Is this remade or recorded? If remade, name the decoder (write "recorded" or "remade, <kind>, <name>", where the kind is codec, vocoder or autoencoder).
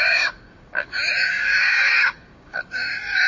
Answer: remade, codec, DAC